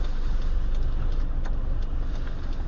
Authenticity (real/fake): real